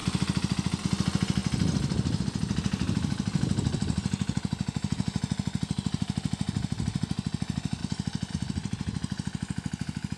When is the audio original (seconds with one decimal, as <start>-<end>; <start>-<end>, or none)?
0.0-10.2